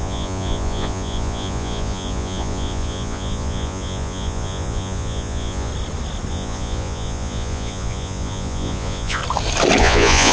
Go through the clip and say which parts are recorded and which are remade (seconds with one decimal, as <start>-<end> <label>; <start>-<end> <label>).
0.0-5.7 remade; 5.7-6.3 recorded; 6.3-9.2 remade; 9.2-9.8 recorded; 9.8-10.3 remade